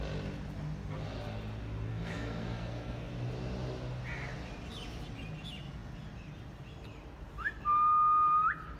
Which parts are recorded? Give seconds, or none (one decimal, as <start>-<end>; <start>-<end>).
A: 0.0-1.9; 3.1-8.8